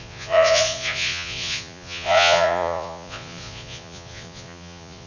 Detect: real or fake fake